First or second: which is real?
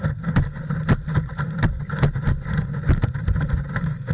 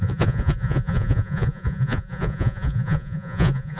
first